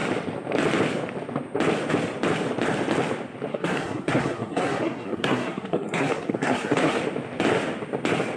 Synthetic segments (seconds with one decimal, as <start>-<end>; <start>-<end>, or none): 3.5-7.0